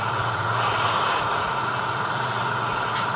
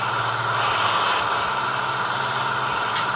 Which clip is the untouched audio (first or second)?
second